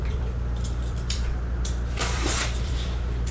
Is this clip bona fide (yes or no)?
no